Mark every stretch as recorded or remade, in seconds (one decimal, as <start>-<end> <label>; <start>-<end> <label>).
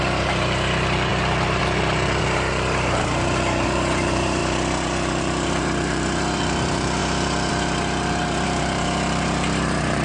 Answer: 0.0-4.4 remade; 4.4-5.2 recorded; 5.2-10.0 remade